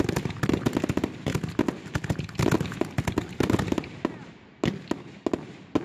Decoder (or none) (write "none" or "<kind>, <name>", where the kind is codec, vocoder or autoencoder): none